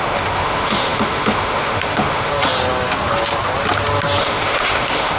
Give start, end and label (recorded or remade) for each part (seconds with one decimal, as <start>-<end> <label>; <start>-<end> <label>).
0.0-2.3 remade; 2.3-4.2 recorded; 4.2-5.2 remade